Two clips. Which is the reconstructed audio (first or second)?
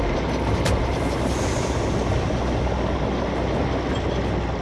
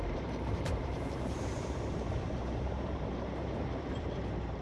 second